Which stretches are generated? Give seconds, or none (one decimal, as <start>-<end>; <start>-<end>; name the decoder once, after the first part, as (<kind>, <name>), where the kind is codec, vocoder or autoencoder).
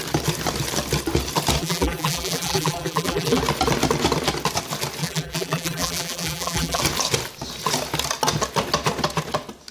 1.6-3.4 (vocoder, BigVGAN v2); 5.0-6.8